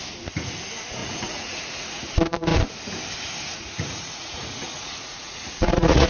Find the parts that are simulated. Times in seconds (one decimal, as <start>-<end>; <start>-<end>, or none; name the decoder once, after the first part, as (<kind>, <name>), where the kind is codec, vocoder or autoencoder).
1.0-2.0 (vocoder, Vocos); 3.5-6.1